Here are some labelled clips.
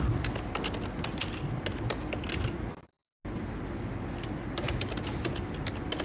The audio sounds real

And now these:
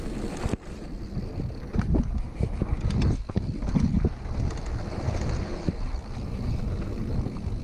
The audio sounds real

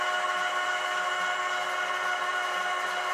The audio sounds real